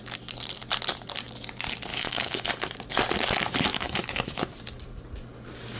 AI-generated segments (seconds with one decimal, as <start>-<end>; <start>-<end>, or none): 1.9-2.5; 3.7-4.5